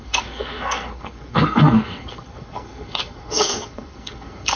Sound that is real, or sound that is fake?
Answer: fake